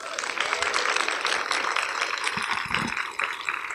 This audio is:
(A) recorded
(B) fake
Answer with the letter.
B